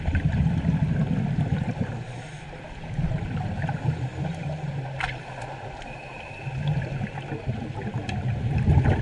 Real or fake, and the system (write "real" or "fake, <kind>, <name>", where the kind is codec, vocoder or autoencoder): real